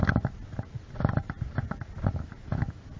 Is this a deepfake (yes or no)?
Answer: no